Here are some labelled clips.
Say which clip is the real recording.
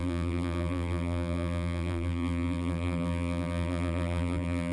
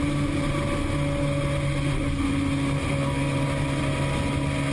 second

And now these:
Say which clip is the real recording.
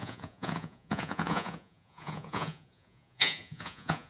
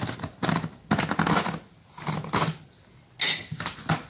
second